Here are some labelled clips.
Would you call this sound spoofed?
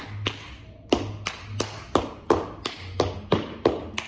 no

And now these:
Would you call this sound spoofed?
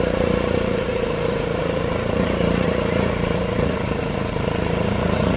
yes